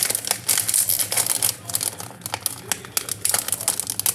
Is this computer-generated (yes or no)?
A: no